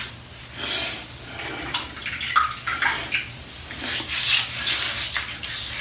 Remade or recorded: recorded